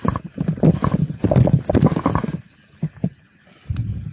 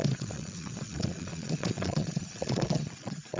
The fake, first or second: second